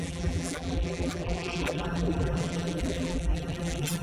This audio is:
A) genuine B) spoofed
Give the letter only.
B